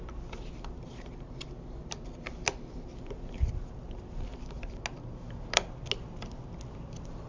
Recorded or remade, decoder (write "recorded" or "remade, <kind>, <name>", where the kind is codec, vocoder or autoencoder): recorded